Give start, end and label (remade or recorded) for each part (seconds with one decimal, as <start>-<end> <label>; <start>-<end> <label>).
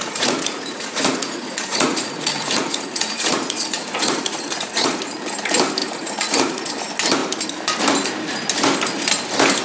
0.0-5.0 remade; 5.0-5.8 recorded; 5.8-6.7 remade; 6.7-9.6 recorded